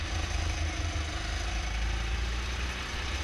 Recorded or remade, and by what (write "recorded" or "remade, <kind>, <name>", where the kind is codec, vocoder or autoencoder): recorded